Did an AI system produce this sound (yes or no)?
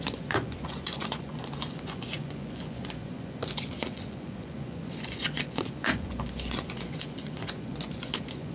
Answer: yes